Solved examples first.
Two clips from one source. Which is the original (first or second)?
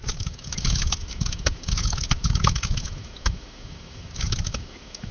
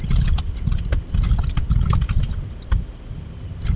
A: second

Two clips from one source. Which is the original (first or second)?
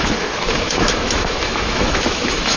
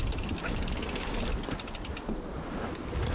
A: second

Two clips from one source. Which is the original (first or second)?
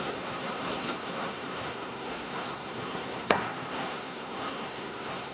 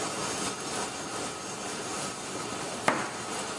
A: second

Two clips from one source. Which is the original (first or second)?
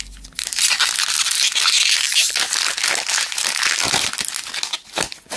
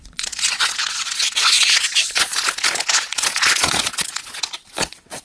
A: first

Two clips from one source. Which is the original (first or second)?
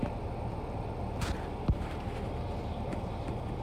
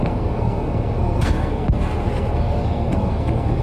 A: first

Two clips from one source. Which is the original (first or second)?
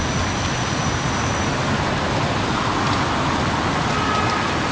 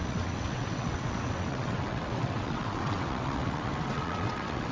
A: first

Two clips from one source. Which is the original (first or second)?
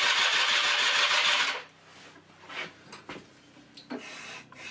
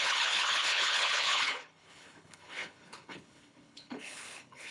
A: first